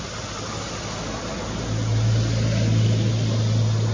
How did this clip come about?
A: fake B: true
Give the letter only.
B